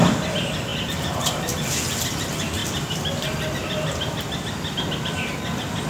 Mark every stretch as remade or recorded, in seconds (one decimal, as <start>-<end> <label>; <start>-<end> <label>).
0.0-0.7 recorded; 0.7-2.0 remade; 2.0-2.6 recorded; 2.6-5.3 remade; 5.3-5.9 recorded